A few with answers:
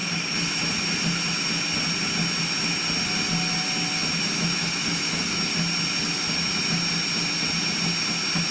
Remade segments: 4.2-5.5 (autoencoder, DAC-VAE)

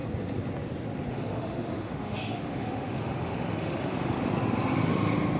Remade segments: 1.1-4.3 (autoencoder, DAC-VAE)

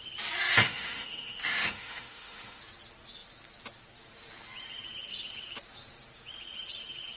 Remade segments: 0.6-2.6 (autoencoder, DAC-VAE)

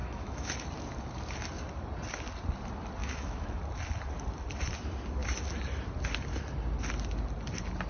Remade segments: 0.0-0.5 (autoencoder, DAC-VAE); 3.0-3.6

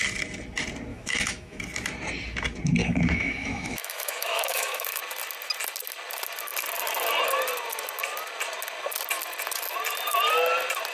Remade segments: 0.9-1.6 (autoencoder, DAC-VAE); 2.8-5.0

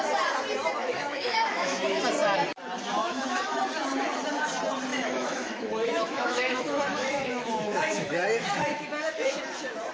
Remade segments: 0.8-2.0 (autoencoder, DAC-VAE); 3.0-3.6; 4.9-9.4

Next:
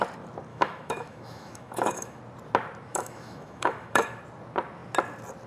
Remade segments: 0.5-2.2 (autoencoder, DAC-VAE); 2.9-4.2